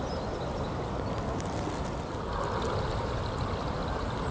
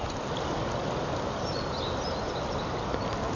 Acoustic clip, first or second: second